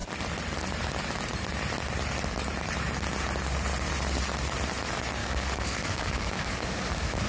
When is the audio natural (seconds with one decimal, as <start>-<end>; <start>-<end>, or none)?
0.0-5.2